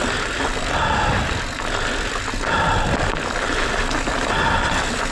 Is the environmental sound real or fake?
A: real